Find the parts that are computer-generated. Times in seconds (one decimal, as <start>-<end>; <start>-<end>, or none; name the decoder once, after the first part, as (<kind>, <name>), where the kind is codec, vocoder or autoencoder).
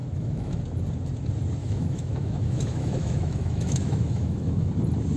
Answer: 0.0-0.6 (autoencoder, DAC-VAE); 1.6-4.7